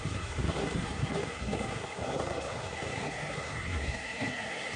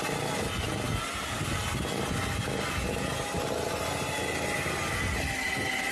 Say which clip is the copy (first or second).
first